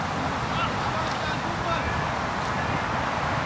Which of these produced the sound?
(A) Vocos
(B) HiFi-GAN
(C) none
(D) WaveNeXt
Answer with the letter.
C